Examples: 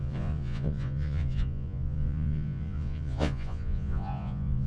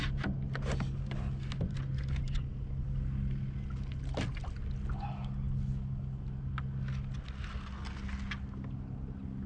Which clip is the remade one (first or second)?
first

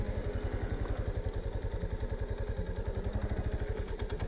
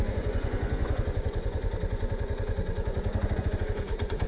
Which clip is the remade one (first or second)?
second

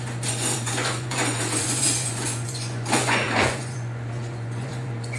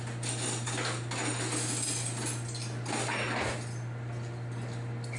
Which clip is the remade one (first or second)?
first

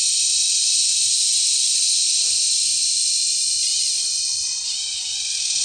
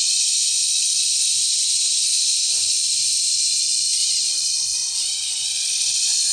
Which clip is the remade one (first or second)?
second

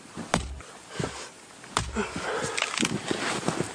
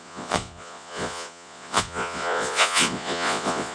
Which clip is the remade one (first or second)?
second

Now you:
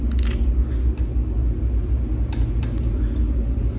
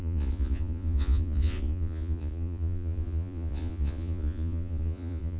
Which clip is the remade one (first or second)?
second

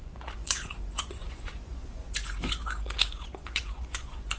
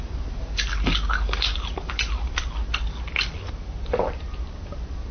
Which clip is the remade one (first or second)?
first